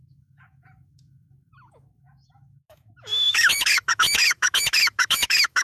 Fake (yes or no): yes